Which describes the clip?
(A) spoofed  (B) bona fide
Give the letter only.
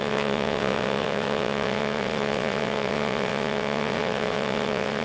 A